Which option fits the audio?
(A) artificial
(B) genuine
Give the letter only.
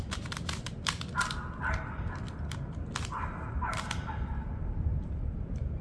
A